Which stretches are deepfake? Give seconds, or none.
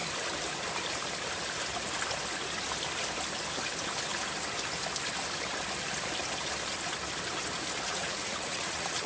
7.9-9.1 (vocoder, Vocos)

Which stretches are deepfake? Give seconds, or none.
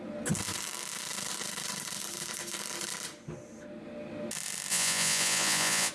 4.7-5.9 (vocoder, Vocos)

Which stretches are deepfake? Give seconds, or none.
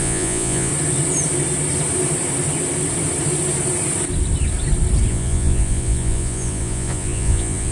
0.0-0.7 (vocoder, Vocos); 5.1-7.7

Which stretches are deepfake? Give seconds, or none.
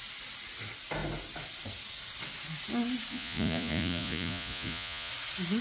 3.1-5.1 (vocoder, Vocos)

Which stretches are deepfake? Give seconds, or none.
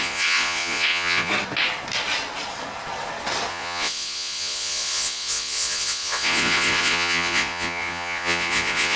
0.0-1.3 (vocoder, Vocos); 3.5-9.0